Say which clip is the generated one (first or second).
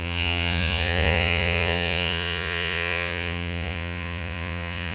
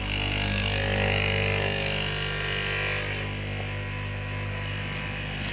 first